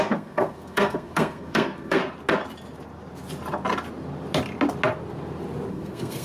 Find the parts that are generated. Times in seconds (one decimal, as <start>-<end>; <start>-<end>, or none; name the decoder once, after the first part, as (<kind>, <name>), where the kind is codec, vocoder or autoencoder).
0.0-2.0 (codec, SNAC); 5.7-6.2